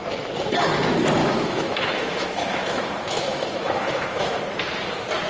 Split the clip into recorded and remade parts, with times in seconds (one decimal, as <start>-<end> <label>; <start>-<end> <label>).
0.0-1.2 recorded; 1.2-4.4 remade; 4.4-5.3 recorded